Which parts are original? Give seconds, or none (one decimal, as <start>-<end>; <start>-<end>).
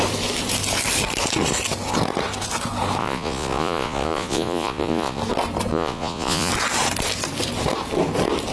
0.0-3.0; 5.2-5.7; 6.5-8.5